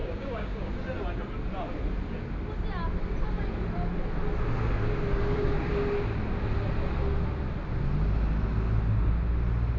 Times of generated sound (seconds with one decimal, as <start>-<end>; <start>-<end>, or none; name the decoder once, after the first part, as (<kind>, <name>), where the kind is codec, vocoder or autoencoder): 0.0-0.7 (codec, DAC)